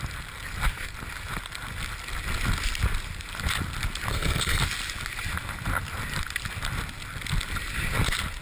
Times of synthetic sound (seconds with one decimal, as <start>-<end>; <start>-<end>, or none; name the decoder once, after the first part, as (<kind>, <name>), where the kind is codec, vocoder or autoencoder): 4.1-4.6 (codec, SNAC)